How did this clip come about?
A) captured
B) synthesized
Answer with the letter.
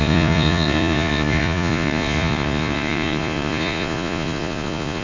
B